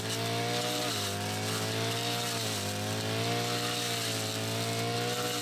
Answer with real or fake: real